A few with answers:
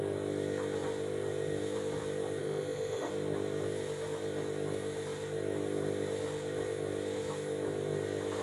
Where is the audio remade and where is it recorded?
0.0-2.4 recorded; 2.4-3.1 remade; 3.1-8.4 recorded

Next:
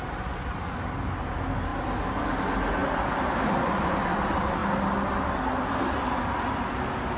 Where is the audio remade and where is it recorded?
0.0-7.2 recorded

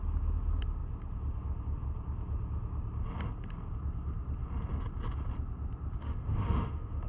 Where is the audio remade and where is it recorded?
0.0-6.0 recorded; 6.0-7.1 remade

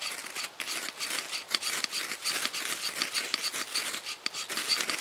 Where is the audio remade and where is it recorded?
0.0-5.0 recorded

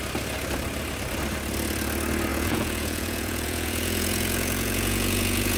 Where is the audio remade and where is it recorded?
0.0-2.3 recorded; 2.3-5.6 remade

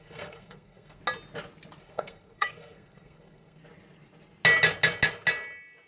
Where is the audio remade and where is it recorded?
0.0-1.0 remade; 1.0-1.8 recorded; 1.8-3.6 remade; 3.6-5.9 recorded

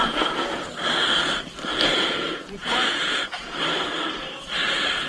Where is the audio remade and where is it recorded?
0.0-0.7 remade; 0.7-1.9 recorded; 1.9-3.6 remade; 3.6-5.1 recorded

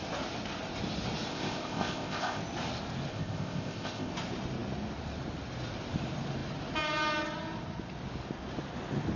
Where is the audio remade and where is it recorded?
0.0-1.3 recorded; 1.3-2.4 remade; 2.4-3.1 recorded; 3.1-4.1 remade; 4.1-9.2 recorded